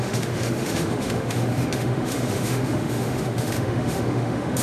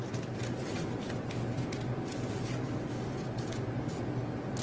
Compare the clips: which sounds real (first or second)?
second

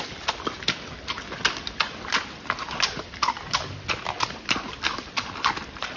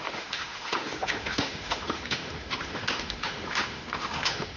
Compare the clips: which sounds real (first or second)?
first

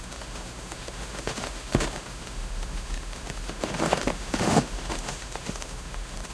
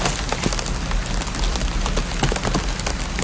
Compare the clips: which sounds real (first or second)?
second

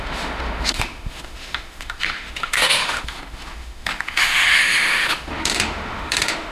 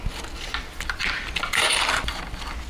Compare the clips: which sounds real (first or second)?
second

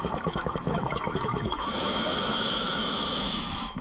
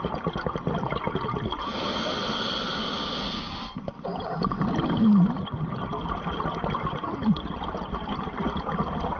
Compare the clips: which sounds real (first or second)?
second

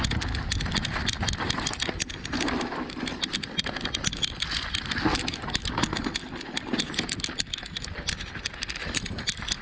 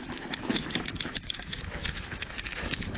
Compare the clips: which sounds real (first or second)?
first